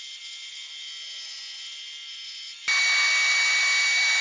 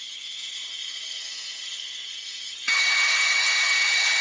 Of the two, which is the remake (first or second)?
second